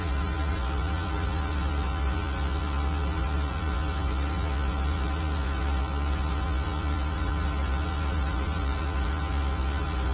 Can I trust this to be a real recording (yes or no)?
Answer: no